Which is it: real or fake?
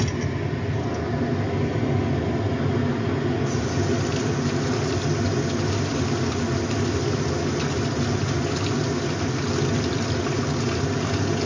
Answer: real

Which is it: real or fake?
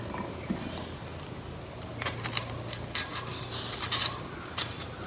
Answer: real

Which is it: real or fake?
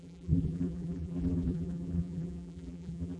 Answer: fake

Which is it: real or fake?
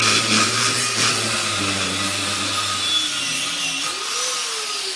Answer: real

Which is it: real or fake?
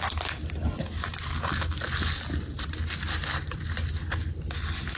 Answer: real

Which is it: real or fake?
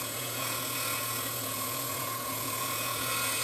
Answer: fake